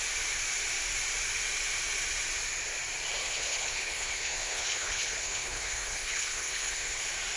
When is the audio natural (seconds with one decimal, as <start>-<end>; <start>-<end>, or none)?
0.0-3.2; 7.0-7.4